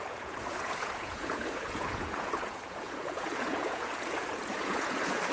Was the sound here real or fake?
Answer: fake